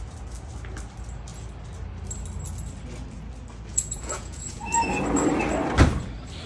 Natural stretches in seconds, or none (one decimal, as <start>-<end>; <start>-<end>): 0.0-3.7; 4.6-6.5